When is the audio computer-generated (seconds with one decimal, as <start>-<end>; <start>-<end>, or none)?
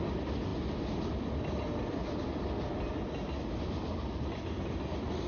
none